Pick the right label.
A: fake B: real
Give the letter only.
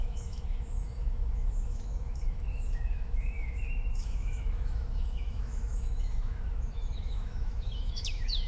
A